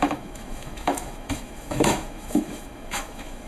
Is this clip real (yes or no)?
no